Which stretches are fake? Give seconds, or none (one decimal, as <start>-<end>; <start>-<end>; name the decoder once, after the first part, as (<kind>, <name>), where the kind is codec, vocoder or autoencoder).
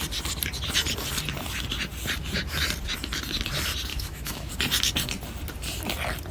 3.9-4.5 (autoencoder, DAC-VAE)